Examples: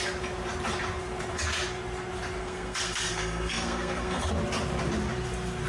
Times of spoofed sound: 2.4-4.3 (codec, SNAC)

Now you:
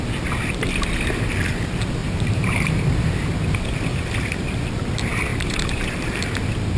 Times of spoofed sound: 2.0-3.3 (vocoder, BigVGAN v2); 3.9-4.6; 5.3-6.2

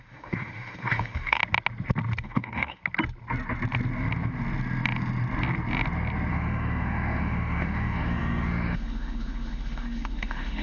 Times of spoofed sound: 0.0-1.4 (autoencoder, DAC-VAE); 2.2-2.8; 6.3-10.6